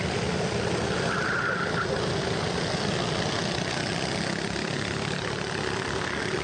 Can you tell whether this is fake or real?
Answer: real